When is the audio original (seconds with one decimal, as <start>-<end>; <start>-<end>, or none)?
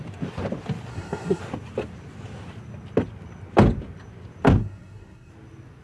0.0-0.9; 1.4-4.6; 5.3-5.8